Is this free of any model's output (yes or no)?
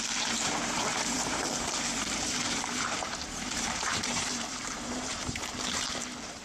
no